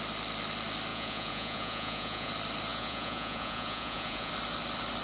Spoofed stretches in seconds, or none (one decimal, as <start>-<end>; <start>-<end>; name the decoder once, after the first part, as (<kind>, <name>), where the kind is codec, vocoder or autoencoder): 0.9-2.3 (vocoder, Vocos); 2.7-4.3

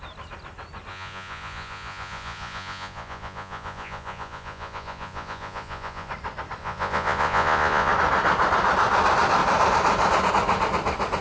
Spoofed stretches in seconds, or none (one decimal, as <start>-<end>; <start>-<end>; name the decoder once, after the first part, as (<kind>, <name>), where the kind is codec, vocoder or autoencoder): 0.9-6.1 (vocoder, Vocos); 6.6-7.9

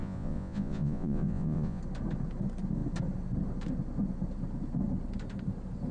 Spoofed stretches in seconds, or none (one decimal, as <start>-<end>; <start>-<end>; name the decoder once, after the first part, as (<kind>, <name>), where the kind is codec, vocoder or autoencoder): 0.0-1.8 (vocoder, Vocos)

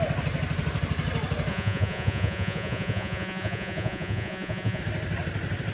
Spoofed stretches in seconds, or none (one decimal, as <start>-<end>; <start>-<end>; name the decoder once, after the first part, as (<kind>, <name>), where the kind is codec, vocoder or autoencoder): 1.5-4.8 (vocoder, Vocos)